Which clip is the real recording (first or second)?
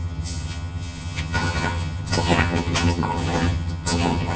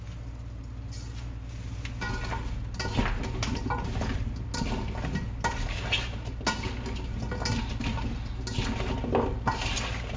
second